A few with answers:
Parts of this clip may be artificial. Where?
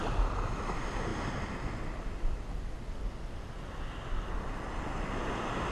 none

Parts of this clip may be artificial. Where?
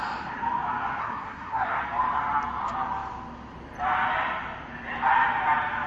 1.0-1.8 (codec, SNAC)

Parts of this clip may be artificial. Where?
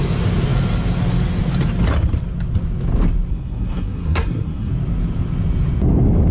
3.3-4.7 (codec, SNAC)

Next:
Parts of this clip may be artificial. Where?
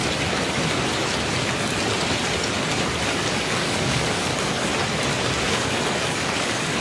3.1-4.7 (codec, DAC); 5.4-6.8